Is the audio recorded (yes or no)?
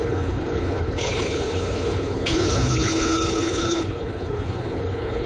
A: no